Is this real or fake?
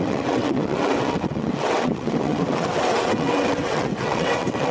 fake